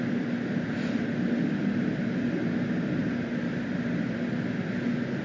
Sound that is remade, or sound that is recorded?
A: recorded